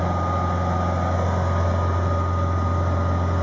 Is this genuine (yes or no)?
yes